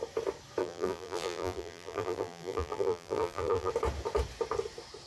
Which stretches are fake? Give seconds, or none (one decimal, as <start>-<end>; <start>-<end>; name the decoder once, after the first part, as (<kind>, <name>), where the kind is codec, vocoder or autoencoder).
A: 0.6-3.7 (vocoder, BigVGAN v2)